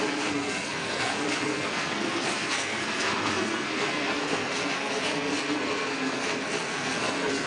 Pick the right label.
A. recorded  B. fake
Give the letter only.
B